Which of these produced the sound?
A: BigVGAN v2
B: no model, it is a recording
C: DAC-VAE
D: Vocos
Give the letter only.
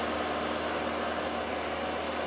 B